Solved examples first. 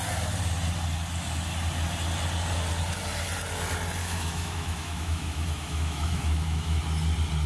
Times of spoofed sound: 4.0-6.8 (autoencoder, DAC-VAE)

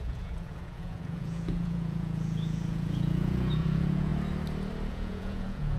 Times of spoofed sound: 0.0-4.1 (vocoder, Vocos); 4.9-5.8

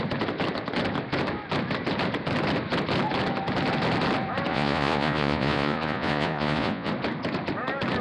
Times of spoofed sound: 4.5-6.9 (vocoder, Vocos)

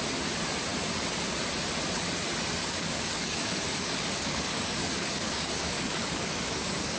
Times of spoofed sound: 2.6-7.0 (codec, DAC)

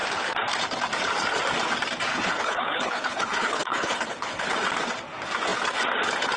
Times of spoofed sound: 2.1-4.5 (codec, HILCodec)

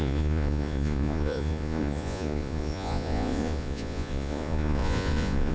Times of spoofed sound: 0.0-5.5 (vocoder, Vocos)

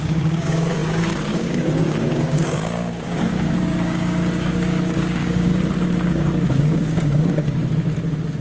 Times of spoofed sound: 0.0-5.5 (codec, DAC); 6.1-7.6

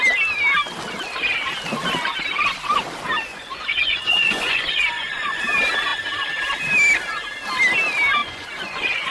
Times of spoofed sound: 3.3-5.4 (vocoder, Vocos); 8.2-9.1